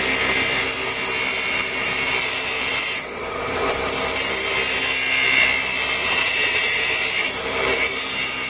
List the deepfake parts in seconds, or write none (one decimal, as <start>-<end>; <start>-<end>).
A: 2.7-3.7; 6.0-6.8